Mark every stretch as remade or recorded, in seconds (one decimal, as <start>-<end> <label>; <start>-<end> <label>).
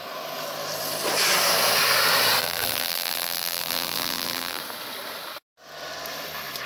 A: 0.0-2.4 recorded; 2.4-4.6 remade; 4.6-6.7 recorded